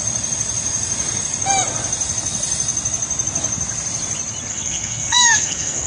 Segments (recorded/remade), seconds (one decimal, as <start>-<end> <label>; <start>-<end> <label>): 0.0-4.5 recorded; 4.5-5.9 remade